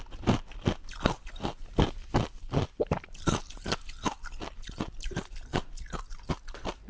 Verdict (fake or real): real